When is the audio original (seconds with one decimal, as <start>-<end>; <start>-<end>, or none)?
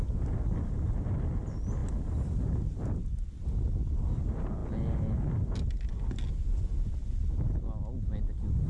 0.0-8.7